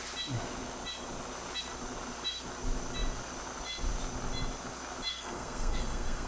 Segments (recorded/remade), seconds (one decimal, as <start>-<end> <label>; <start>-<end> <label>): 0.0-5.1 recorded; 5.1-6.3 remade